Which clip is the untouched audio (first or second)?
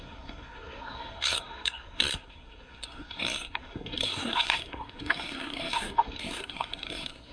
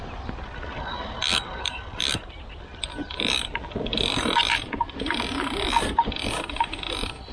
second